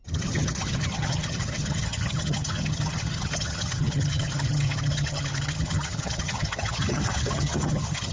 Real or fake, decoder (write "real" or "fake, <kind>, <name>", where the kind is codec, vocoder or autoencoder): fake, vocoder, HiFi-GAN